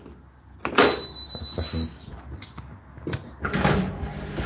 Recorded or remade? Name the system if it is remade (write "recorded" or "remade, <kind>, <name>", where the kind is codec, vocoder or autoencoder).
recorded